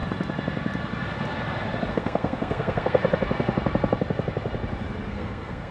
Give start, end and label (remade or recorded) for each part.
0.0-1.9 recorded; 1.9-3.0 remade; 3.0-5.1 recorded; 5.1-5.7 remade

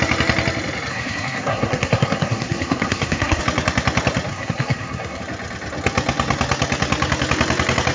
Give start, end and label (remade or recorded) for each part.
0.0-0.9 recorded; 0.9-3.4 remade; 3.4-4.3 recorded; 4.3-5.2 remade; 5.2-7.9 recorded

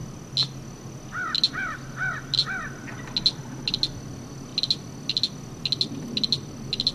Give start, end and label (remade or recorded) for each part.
0.0-6.9 recorded

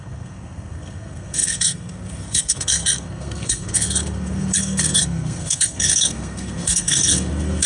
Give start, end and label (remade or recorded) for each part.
0.0-7.7 remade